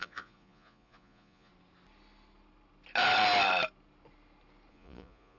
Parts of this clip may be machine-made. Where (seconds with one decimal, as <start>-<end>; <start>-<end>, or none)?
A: 0.0-1.5; 4.7-5.4